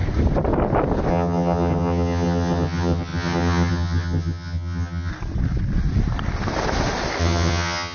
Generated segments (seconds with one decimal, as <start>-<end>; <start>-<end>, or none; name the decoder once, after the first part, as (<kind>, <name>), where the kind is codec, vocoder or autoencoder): 1.1-5.1 (vocoder, HiFi-GAN); 7.2-7.9